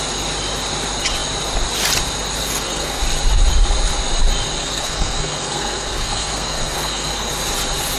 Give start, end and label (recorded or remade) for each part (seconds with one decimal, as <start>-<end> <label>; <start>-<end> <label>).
0.0-2.4 recorded; 2.4-3.0 remade; 3.0-4.6 recorded; 4.6-7.3 remade; 7.3-8.0 recorded